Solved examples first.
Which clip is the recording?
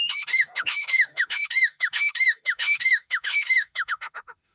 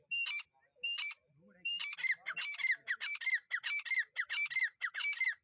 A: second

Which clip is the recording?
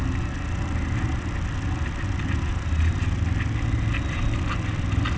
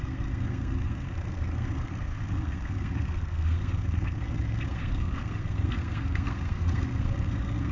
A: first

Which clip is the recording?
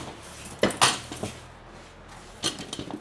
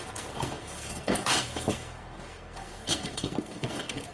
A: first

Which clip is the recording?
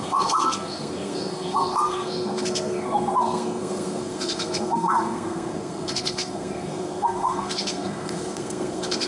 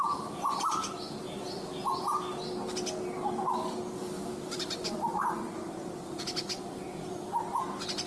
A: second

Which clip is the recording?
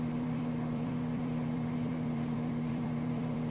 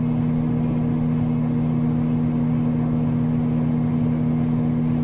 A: second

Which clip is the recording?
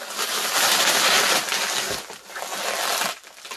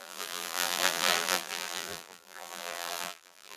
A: first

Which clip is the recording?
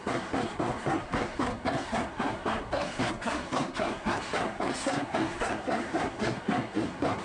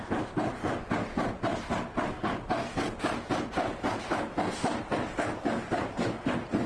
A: second